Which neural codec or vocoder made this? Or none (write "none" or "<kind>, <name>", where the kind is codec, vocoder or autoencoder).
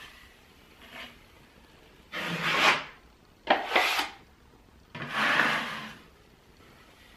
none